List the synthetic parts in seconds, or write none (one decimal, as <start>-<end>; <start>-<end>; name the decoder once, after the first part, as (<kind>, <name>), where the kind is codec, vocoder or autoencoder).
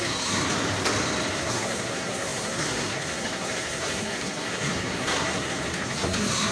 0.0-0.4 (codec, SNAC); 1.3-6.5